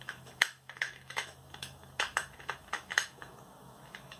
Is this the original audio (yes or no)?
no